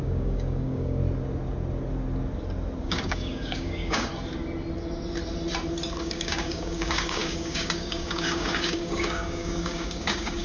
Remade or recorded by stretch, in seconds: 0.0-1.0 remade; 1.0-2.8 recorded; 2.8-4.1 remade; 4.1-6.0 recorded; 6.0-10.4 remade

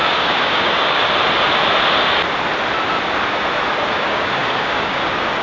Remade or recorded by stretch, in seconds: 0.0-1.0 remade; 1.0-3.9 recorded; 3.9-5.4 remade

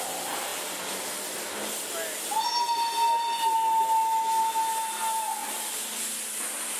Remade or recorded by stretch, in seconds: 0.0-6.8 recorded

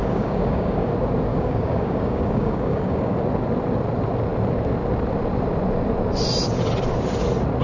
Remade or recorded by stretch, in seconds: 0.0-0.9 remade; 0.9-1.3 recorded; 1.3-3.1 remade; 3.1-7.6 recorded

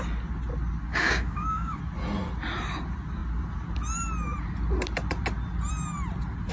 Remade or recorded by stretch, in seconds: 0.0-0.9 recorded; 0.9-1.8 remade; 1.8-6.5 recorded

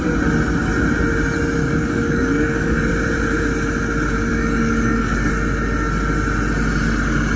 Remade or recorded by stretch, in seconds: 0.0-1.6 recorded; 1.6-2.9 remade; 2.9-4.3 recorded; 4.3-5.3 remade; 5.3-7.4 recorded